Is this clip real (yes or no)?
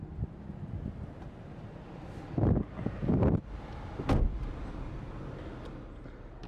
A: yes